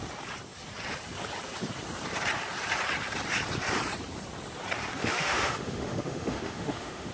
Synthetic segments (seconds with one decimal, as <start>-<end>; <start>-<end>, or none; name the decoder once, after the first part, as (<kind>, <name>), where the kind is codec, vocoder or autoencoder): 5.0-7.1 (autoencoder, DAC-VAE)